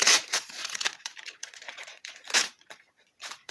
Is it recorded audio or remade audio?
remade